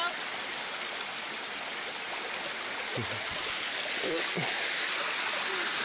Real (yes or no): yes